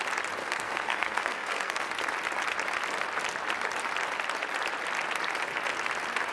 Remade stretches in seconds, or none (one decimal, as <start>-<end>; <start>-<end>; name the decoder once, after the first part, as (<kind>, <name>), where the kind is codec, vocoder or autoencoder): 0.4-1.9 (codec, SNAC)